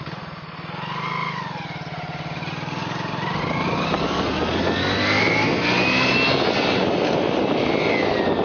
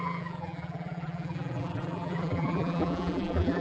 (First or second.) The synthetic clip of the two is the second